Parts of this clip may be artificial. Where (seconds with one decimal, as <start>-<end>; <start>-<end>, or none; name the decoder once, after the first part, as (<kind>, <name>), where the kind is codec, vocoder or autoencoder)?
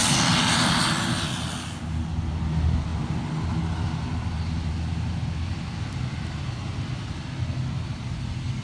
none